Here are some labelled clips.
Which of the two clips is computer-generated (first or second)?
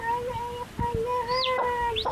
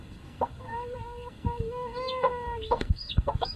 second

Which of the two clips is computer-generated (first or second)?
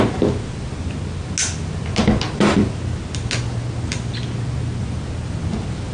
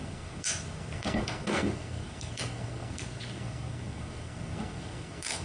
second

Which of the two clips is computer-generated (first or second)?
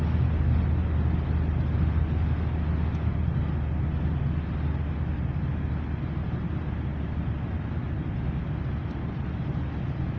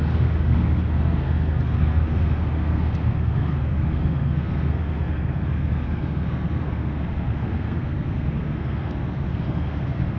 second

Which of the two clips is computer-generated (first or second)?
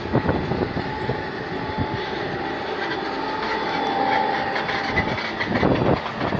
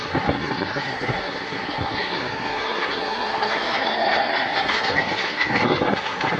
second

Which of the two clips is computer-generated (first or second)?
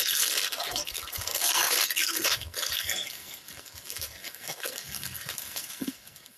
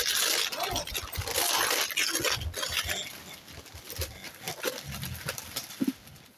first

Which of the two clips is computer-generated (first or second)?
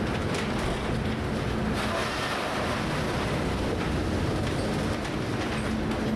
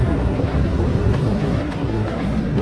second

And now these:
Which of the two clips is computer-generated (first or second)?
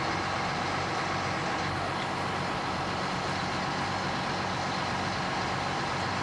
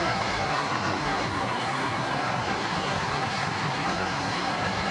second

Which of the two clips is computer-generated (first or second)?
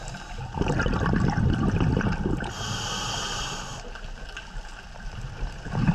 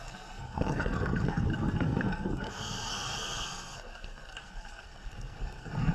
second